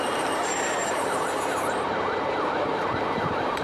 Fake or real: fake